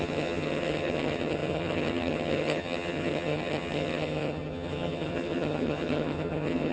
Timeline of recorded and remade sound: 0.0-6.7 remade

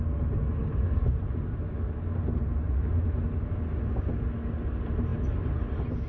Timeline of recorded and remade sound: 0.0-6.1 recorded